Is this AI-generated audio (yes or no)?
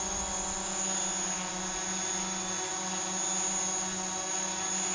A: no